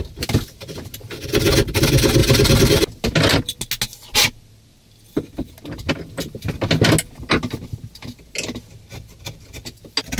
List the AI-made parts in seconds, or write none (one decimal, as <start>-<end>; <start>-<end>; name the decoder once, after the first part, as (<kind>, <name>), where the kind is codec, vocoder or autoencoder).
none